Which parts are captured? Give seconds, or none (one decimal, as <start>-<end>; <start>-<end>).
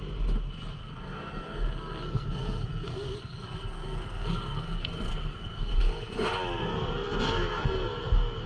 0.0-0.8; 5.8-6.6